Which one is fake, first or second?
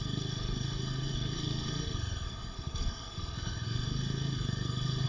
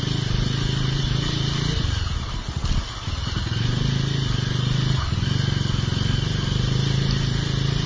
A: first